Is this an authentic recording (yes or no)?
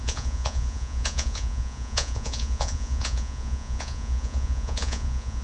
no